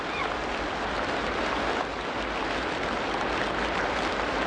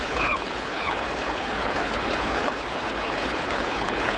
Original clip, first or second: first